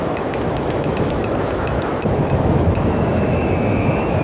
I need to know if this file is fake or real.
fake